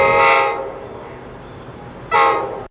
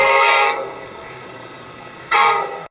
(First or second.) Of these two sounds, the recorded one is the first